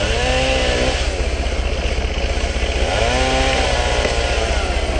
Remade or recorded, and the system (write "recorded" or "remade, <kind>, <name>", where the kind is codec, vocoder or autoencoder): recorded